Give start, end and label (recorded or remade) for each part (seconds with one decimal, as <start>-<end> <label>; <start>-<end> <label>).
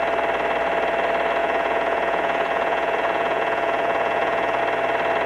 0.0-1.4 recorded; 1.4-4.6 remade; 4.6-5.3 recorded